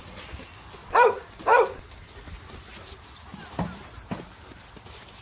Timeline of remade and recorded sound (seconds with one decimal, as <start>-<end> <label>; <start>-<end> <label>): 0.0-5.2 recorded